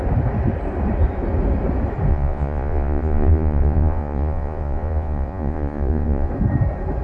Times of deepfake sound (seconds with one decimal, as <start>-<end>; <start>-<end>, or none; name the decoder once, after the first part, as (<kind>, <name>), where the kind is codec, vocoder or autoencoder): 2.1-6.3 (vocoder, Vocos)